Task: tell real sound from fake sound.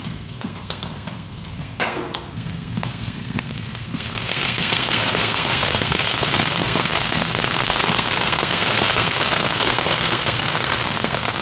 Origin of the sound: fake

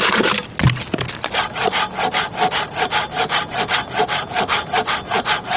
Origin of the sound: real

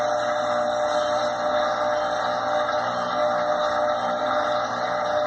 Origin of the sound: real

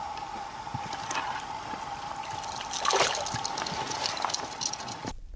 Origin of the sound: real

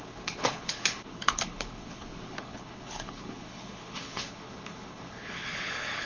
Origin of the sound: fake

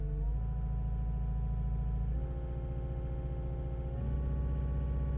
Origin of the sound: real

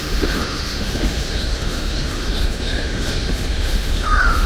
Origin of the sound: fake